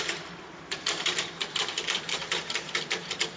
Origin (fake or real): fake